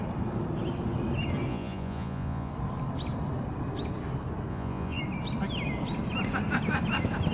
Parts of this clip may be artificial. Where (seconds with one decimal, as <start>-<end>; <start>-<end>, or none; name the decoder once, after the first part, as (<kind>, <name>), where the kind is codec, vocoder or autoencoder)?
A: 1.5-2.5 (vocoder, Vocos); 4.5-5.0